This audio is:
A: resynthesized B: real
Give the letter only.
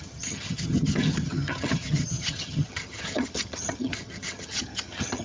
A